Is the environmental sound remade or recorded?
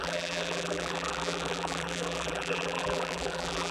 remade